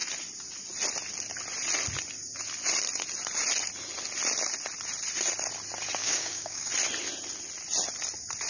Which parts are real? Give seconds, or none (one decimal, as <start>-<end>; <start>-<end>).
0.0-6.0; 6.7-8.5